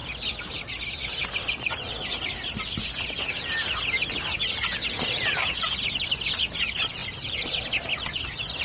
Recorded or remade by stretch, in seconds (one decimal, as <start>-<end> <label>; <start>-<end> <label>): 0.0-8.6 recorded